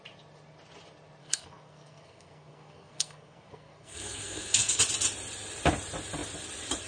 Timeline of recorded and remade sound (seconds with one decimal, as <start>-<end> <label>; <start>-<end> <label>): 0.0-1.2 recorded; 1.2-4.8 remade; 4.8-6.9 recorded

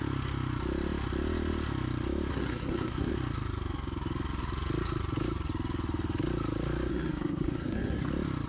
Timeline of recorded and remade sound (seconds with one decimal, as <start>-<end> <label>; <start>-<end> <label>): 0.0-2.3 recorded; 2.3-3.1 remade; 3.1-6.9 recorded; 6.9-8.1 remade; 8.1-8.5 recorded

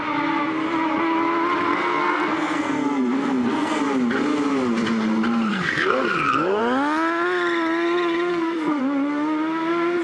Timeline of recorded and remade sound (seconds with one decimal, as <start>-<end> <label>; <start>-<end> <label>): 0.0-1.6 recorded; 1.6-3.8 remade; 3.8-5.5 recorded; 5.5-6.6 remade; 6.6-8.3 recorded; 8.3-8.8 remade; 8.8-10.0 recorded

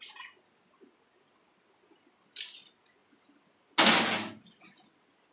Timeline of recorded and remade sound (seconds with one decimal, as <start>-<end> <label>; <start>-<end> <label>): 0.0-5.3 recorded

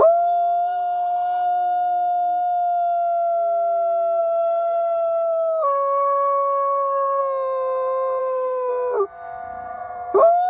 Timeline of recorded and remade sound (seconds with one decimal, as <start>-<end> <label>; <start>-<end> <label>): 0.0-4.2 recorded; 4.2-7.2 remade; 7.2-8.2 recorded; 8.2-8.7 remade; 8.7-10.5 recorded